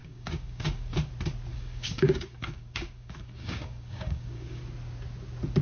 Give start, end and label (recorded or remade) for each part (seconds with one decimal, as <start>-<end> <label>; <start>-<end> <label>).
0.0-1.1 remade; 1.1-1.5 recorded; 1.5-4.6 remade; 4.6-5.6 recorded